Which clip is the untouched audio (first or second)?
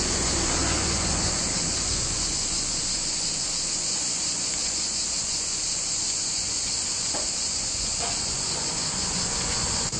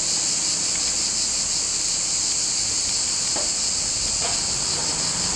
second